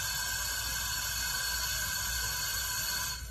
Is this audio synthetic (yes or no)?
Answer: no